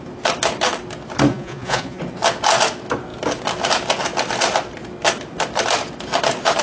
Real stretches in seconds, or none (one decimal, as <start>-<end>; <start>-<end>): 0.0-1.3; 2.0-6.6